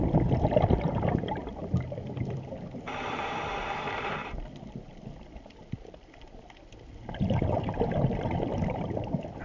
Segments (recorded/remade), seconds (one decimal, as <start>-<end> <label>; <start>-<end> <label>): 0.0-9.4 remade